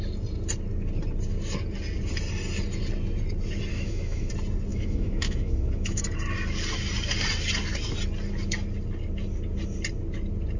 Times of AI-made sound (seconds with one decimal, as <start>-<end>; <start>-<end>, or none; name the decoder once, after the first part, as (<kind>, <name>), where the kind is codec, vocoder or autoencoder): 3.7-4.3 (autoencoder, DAC-VAE); 4.7-6.0